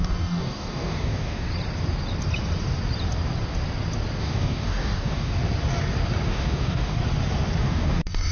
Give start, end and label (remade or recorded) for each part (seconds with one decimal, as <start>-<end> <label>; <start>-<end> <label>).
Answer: 0.0-1.5 remade; 1.5-4.2 recorded; 4.2-5.4 remade; 5.4-6.3 recorded; 6.3-7.0 remade; 7.0-7.6 recorded; 7.6-8.3 remade